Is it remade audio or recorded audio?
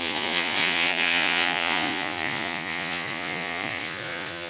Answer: remade